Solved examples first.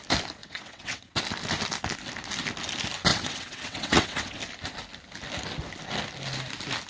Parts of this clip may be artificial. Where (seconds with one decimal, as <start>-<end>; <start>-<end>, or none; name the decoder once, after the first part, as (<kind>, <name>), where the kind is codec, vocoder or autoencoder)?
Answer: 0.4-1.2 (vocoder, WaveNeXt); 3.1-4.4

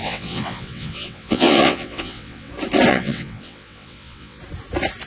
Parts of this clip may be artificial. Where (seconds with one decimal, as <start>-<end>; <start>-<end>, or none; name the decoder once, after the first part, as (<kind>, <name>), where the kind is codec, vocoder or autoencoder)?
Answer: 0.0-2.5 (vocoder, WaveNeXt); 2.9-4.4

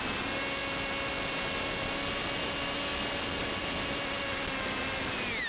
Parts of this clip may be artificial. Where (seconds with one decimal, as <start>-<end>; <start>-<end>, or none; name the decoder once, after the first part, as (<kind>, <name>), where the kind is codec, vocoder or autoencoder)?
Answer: none

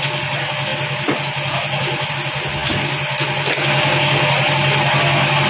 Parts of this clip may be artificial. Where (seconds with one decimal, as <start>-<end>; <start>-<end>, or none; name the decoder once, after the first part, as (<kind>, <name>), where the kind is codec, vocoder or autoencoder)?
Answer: none

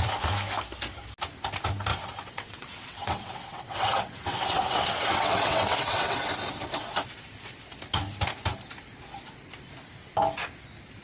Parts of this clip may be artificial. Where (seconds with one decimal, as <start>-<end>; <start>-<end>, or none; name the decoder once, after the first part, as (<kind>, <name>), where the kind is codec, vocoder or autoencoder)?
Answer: 1.9-6.2 (vocoder, WaveNeXt)